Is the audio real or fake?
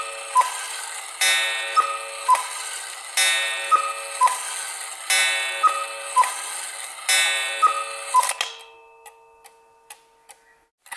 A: real